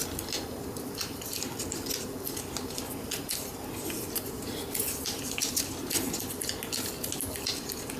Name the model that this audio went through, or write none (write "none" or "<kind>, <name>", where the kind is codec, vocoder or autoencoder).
none